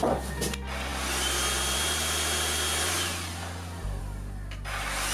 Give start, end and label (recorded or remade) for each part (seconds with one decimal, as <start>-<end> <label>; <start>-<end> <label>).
0.0-5.1 recorded